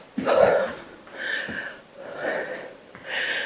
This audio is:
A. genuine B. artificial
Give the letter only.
A